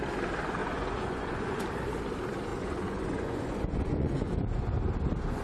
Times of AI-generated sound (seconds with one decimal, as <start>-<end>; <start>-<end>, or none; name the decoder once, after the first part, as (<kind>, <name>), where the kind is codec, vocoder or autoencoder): 0.6-1.6 (vocoder, Vocos); 2.5-4.6